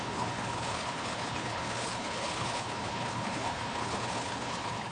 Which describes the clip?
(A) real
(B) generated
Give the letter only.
B